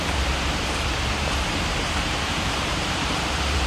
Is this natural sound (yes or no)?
no